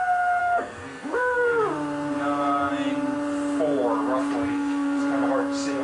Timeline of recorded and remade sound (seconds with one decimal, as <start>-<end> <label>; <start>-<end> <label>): 0.0-0.4 recorded; 0.4-1.6 remade; 1.6-4.5 recorded; 4.5-5.0 remade; 5.0-5.8 recorded